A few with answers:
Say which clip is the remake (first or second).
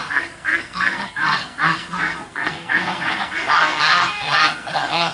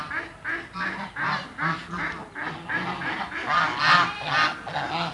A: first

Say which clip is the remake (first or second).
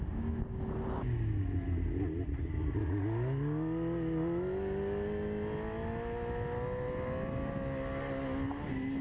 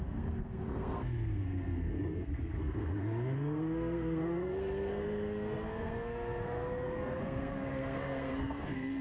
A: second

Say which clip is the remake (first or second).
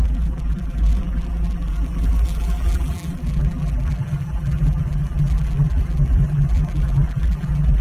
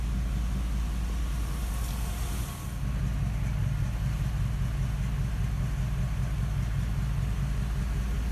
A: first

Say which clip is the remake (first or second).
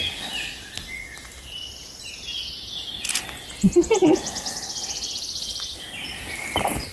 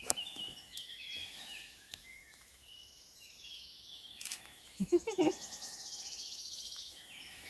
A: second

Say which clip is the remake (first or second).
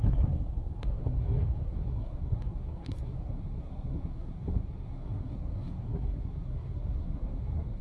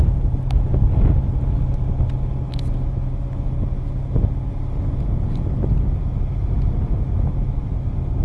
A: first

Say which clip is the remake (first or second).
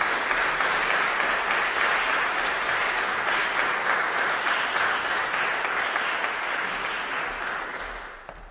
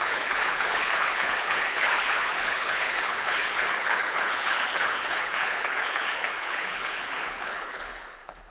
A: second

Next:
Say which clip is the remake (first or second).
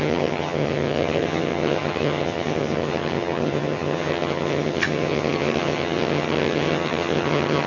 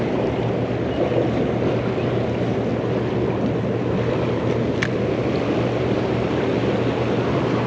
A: first